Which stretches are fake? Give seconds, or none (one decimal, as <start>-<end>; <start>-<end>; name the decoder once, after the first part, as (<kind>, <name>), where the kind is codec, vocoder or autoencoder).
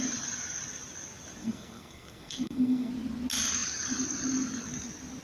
1.4-2.9 (codec, SNAC)